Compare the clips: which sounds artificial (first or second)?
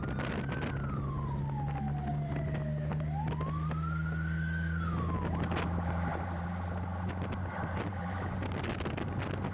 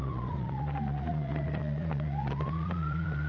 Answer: second